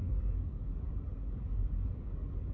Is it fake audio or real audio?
fake